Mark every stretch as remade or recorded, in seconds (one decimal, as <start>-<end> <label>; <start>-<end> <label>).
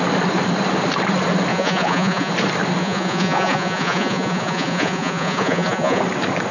0.0-1.5 recorded; 1.5-2.3 remade; 2.3-2.8 recorded; 2.8-6.0 remade; 6.0-6.5 recorded